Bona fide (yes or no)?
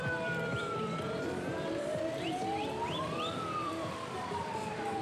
no